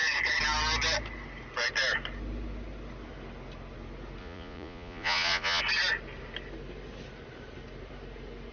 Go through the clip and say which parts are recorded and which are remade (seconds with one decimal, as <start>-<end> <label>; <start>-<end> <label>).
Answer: 0.0-4.2 recorded; 4.2-5.6 remade; 5.6-8.5 recorded